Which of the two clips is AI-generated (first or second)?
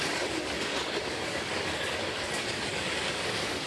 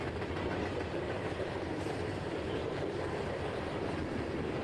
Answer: first